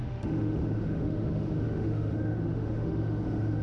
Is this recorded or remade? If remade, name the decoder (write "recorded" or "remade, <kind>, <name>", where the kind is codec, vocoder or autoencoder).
remade, autoencoder, DAC-VAE